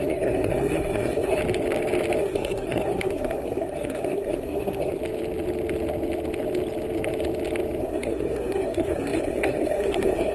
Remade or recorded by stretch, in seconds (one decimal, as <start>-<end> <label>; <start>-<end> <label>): 0.0-1.4 remade; 1.4-2.2 recorded; 2.2-5.0 remade; 5.0-7.8 recorded; 7.8-10.3 remade